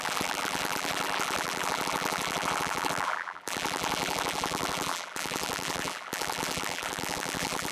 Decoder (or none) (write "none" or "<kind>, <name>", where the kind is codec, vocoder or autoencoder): vocoder, BigVGAN v2